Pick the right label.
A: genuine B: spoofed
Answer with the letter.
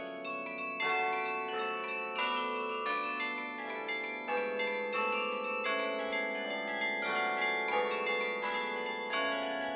A